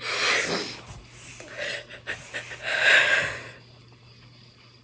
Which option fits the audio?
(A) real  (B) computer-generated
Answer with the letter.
A